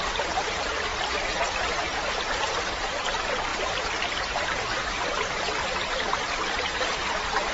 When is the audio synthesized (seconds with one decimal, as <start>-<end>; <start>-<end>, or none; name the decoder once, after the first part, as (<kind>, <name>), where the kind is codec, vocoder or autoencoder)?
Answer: 0.0-0.9 (vocoder, BigVGAN v2); 1.6-3.5; 4.1-7.5